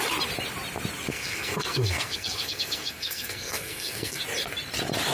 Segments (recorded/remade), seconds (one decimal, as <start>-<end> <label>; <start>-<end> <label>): 0.0-1.1 recorded; 1.1-4.2 remade; 4.2-5.1 recorded